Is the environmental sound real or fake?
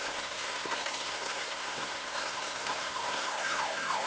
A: fake